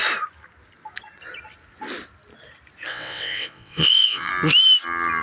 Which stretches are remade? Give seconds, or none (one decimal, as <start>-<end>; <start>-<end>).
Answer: 2.9-4.3